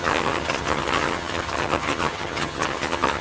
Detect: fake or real fake